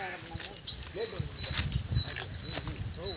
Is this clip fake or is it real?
real